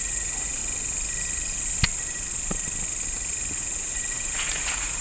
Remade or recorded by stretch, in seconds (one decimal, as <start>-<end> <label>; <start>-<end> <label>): 0.0-0.6 remade; 0.6-3.6 recorded; 3.6-5.0 remade